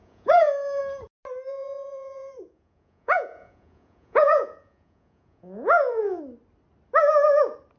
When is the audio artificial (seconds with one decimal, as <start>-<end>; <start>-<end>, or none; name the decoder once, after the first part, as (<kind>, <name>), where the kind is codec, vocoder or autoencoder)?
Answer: 0.0-0.8 (vocoder, Vocos); 1.5-6.2